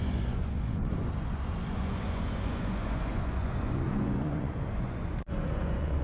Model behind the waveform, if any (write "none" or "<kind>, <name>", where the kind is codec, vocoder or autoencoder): vocoder, Vocos